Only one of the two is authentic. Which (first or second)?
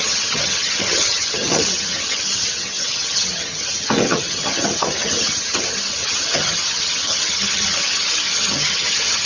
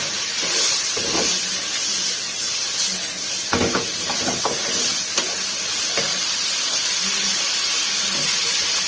second